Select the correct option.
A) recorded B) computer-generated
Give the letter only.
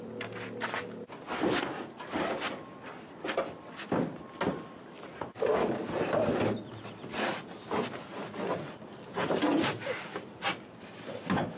A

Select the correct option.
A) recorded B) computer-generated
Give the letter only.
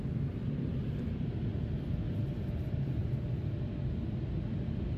A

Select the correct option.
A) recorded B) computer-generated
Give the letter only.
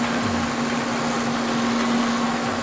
A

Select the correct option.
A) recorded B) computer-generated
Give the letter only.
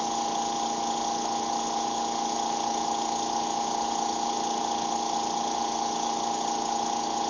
A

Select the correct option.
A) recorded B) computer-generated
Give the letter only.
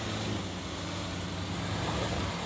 A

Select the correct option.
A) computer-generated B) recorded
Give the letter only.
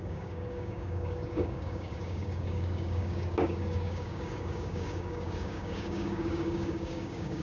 A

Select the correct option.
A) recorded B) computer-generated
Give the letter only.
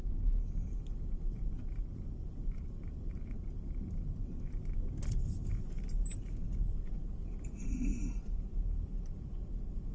A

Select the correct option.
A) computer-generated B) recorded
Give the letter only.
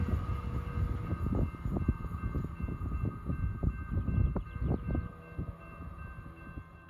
B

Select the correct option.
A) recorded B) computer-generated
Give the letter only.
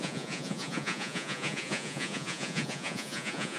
B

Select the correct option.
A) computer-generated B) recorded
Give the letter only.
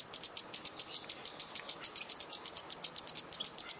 B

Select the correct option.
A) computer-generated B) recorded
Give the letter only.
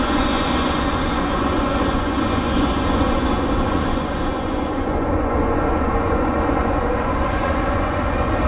A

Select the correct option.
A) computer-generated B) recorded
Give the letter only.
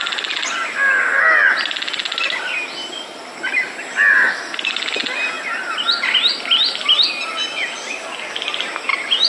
B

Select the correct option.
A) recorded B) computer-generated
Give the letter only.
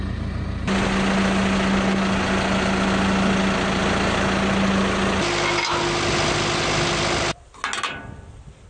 A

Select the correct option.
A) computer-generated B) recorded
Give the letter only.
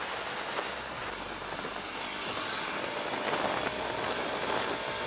B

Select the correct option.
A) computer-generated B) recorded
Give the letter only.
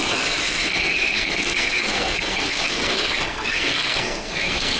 A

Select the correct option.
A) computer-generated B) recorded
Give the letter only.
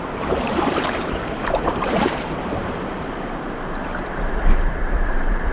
A